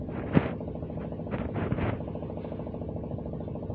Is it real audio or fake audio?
real